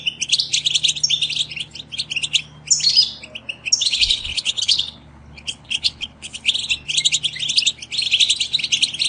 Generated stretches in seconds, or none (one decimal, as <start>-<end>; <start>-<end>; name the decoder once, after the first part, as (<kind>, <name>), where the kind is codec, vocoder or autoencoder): 3.8-6.4 (codec, HILCodec)